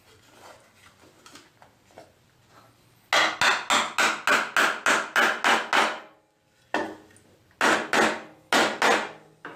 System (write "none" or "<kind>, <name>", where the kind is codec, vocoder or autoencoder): none